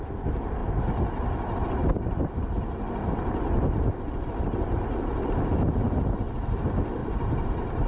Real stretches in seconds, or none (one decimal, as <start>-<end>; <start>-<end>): 0.0-7.0